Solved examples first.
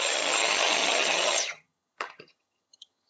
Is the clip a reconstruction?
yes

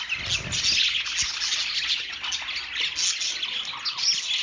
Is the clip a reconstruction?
no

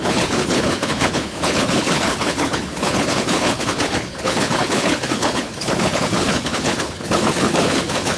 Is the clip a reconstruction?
yes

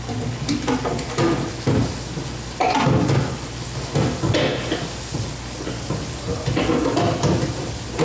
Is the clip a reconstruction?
no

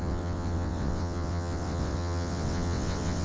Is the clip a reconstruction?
yes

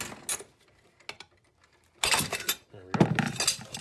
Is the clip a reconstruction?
no